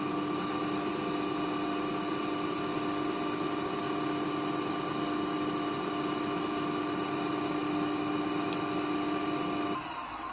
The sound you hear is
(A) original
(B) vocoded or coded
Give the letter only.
A